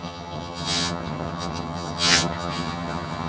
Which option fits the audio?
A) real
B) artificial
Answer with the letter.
B